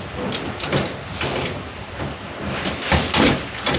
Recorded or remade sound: recorded